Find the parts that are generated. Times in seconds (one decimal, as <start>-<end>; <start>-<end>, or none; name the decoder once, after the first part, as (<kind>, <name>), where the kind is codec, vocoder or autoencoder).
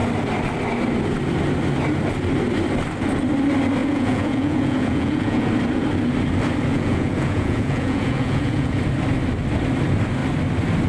3.8-5.5 (vocoder, Vocos); 6.7-8.8